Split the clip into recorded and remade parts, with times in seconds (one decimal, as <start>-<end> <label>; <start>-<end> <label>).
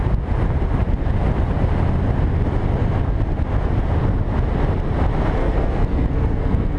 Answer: 0.0-5.4 recorded; 5.4-6.8 remade